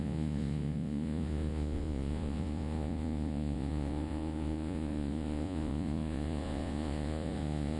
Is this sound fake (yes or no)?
yes